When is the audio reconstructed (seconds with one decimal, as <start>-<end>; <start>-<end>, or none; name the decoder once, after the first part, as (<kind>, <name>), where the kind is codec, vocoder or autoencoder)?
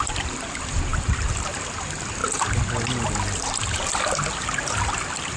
none